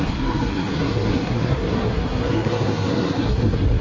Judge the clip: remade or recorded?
remade